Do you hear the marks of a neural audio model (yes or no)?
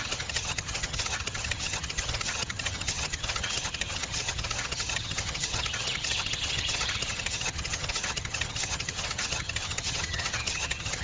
yes